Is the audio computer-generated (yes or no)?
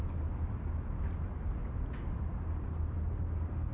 no